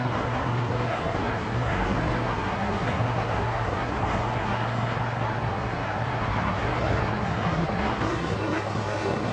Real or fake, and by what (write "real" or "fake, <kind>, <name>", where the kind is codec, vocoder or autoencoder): fake, codec, SNAC